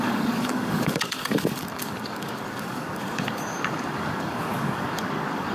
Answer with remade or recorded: remade